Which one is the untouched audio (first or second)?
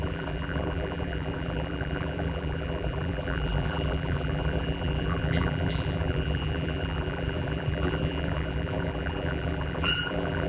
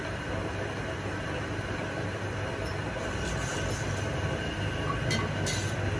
second